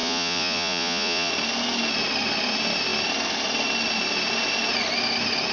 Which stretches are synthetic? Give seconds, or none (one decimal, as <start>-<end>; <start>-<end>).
0.0-1.3